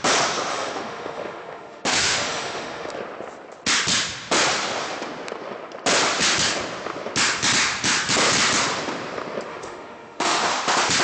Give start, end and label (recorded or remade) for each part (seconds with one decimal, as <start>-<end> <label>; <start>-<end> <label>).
0.0-0.5 recorded; 0.5-3.0 remade; 3.0-9.5 recorded; 9.5-10.6 remade; 10.6-11.0 recorded